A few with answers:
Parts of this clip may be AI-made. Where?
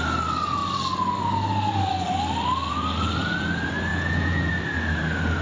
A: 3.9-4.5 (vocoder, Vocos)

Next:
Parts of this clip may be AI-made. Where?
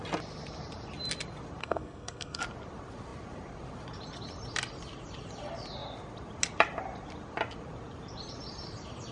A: 1.6-2.4 (codec, SNAC)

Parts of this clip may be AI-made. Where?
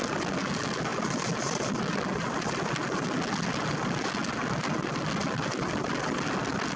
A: none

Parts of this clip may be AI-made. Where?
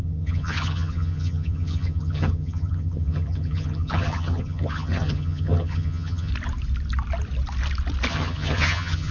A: 0.0-6.3 (vocoder, HiFi-GAN); 8.1-9.1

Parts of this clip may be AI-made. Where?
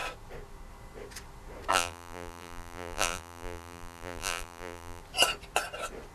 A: 1.7-5.0 (vocoder, BigVGAN v2)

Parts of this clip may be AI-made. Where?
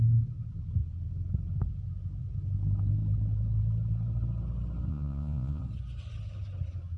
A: 4.9-5.6 (vocoder, Vocos)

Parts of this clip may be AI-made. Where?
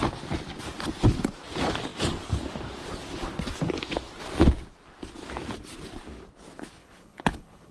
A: 6.8-7.7 (codec, HILCodec)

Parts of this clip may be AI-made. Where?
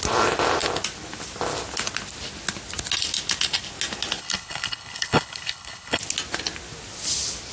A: 4.2-6.0 (codec, HILCodec)